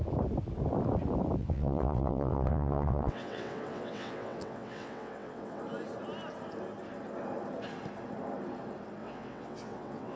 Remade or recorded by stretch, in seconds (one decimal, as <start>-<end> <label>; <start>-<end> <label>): 0.0-1.4 recorded; 1.4-5.6 remade; 5.6-9.0 recorded; 9.0-10.2 remade

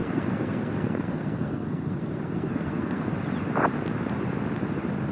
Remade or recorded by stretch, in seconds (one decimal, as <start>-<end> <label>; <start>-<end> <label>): 0.0-3.1 remade; 3.1-5.1 recorded

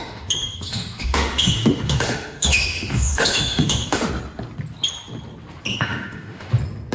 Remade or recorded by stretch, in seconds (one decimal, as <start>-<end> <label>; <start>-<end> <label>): 0.0-4.1 remade; 4.1-5.7 recorded; 5.7-6.5 remade; 6.5-6.9 recorded

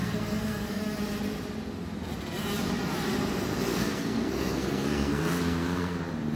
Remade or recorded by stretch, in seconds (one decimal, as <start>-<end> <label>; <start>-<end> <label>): 0.0-0.8 remade; 0.8-3.7 recorded; 3.7-6.0 remade; 6.0-6.4 recorded

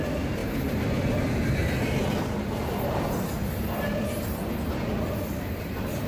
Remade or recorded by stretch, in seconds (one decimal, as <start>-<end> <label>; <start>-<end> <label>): 0.0-6.1 recorded